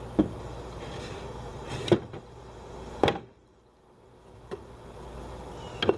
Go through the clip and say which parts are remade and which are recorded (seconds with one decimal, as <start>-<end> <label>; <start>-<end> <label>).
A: 0.0-6.0 recorded